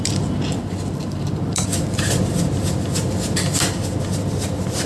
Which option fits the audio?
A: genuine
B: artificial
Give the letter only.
A